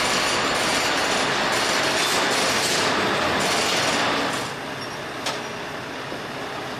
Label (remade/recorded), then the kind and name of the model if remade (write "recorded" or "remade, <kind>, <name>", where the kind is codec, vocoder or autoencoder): recorded